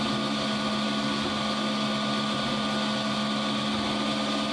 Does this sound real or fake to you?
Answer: real